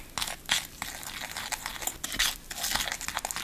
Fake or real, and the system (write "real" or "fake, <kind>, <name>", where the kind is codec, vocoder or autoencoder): real